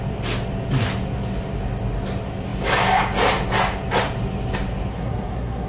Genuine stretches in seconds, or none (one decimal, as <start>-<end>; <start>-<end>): 0.0-4.9